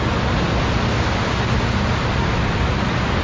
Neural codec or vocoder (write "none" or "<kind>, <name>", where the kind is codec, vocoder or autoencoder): none